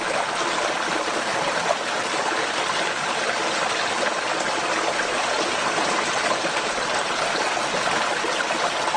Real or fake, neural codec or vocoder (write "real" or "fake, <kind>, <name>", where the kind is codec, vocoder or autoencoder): real